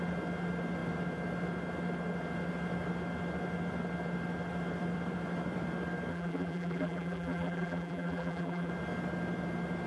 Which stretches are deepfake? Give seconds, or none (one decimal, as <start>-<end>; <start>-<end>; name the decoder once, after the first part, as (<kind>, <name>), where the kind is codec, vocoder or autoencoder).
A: 6.1-8.7 (vocoder, BigVGAN v2)